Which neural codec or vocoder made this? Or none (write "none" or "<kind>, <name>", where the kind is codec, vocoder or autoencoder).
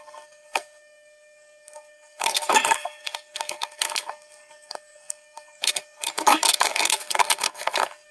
codec, SNAC